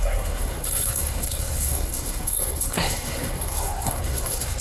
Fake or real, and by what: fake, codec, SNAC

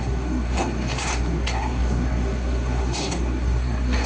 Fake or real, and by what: fake, codec, SNAC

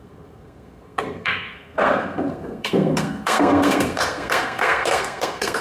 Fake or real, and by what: fake, codec, SNAC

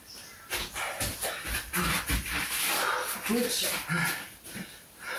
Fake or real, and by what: real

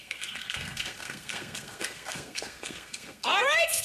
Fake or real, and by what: fake, codec, SNAC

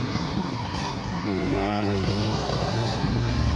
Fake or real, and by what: fake, codec, SNAC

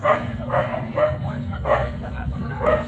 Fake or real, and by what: fake, codec, SNAC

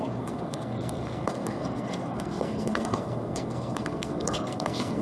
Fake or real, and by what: fake, codec, SNAC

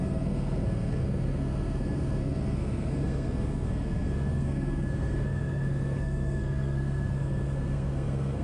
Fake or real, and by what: fake, codec, SNAC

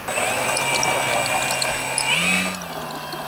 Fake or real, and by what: real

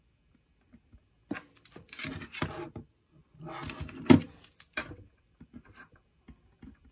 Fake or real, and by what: real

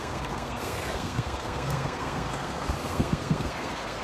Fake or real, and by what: fake, codec, SNAC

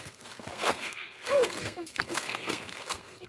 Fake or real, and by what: fake, codec, SNAC